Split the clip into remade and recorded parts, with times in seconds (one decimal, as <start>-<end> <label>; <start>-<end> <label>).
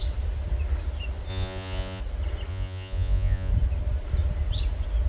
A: 0.0-1.3 recorded; 1.3-2.0 remade; 2.0-2.5 recorded; 2.5-3.5 remade; 3.5-5.1 recorded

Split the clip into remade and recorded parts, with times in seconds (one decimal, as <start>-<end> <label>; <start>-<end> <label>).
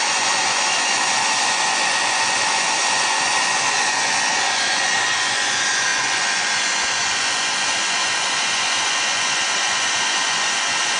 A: 0.0-11.0 remade